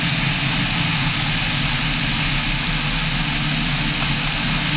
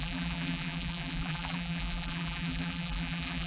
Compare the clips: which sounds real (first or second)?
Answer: first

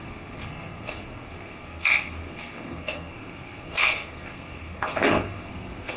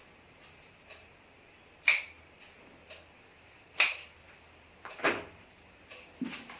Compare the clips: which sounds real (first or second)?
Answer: second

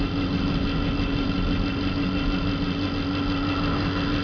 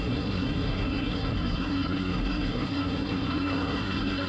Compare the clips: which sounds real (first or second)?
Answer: first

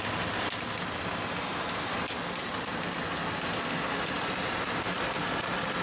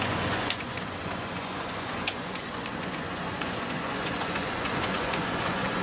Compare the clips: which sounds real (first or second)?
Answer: first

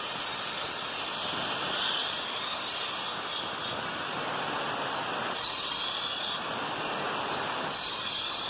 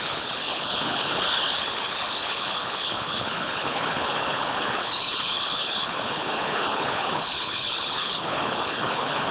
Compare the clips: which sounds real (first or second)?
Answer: first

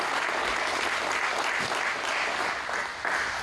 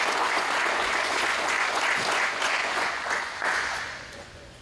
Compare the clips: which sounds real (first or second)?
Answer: first